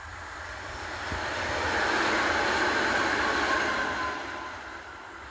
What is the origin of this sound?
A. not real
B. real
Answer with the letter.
B